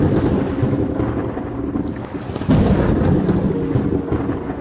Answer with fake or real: real